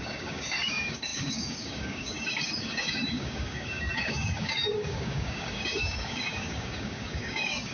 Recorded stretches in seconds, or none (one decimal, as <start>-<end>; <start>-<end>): none